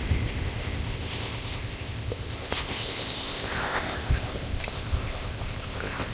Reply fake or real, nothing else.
fake